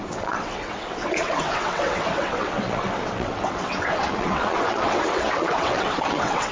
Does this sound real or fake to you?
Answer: fake